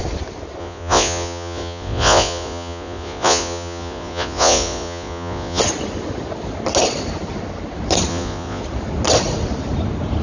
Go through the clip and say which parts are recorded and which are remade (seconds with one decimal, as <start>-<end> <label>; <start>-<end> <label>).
0.0-0.6 recorded; 0.6-5.6 remade; 5.6-8.1 recorded; 8.1-8.6 remade; 8.6-10.2 recorded